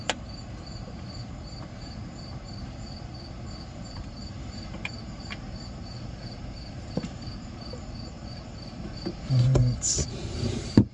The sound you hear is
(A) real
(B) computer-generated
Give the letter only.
B